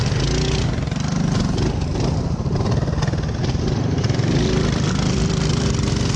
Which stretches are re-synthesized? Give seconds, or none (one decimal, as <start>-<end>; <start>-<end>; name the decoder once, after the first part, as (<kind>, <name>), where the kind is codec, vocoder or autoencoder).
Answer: 3.4-6.2 (vocoder, BigVGAN v2)